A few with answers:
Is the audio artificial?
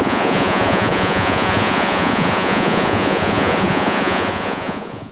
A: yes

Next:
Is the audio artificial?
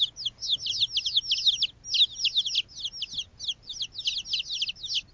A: no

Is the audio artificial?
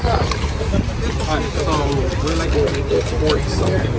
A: no